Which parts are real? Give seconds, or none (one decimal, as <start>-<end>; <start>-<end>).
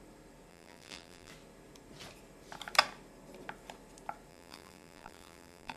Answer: 0.0-0.5; 1.3-4.3